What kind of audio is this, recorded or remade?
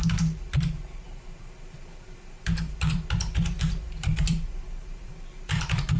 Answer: remade